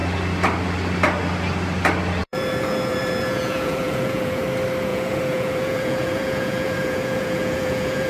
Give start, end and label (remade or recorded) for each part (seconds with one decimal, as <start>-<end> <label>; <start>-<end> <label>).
0.0-2.2 recorded; 2.2-4.4 remade; 4.4-4.9 recorded; 4.9-8.1 remade